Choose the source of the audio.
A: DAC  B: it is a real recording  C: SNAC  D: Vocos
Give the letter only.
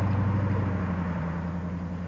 B